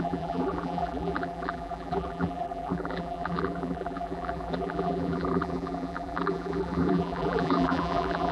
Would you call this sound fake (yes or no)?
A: yes